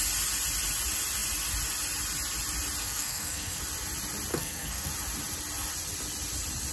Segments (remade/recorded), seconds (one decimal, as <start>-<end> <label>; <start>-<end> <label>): 0.0-2.8 recorded; 2.8-3.6 remade; 3.6-4.3 recorded; 4.3-4.9 remade; 4.9-6.7 recorded